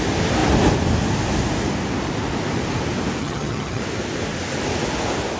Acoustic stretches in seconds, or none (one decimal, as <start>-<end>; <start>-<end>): 0.0-3.2; 3.8-5.4